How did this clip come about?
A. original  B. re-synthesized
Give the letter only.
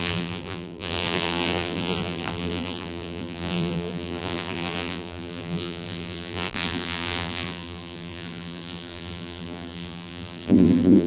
B